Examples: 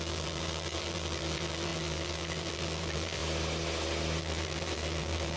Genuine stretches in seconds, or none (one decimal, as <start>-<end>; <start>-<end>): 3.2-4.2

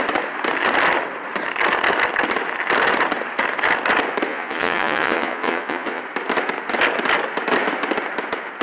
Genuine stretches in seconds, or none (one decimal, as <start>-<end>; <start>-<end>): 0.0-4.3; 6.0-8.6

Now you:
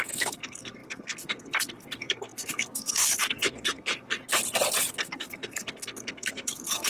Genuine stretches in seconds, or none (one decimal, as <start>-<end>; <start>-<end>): 4.2-4.9

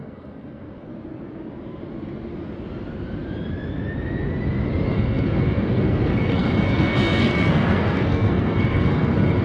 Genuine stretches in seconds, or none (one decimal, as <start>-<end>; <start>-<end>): 0.9-4.9